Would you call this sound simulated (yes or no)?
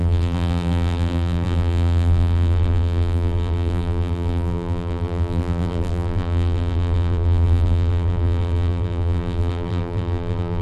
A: yes